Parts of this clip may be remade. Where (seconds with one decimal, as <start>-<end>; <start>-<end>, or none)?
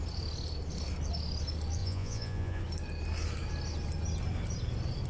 1.8-2.6